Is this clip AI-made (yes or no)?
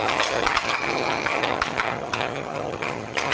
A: yes